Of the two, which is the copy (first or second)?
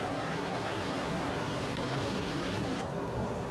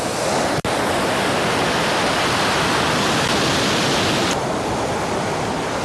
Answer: first